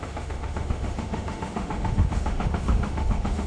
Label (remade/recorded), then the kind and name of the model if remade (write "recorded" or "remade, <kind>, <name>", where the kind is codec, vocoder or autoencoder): remade, autoencoder, DAC-VAE